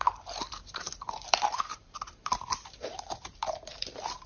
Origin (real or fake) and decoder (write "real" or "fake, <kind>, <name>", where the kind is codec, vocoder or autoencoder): fake, vocoder, BigVGAN v2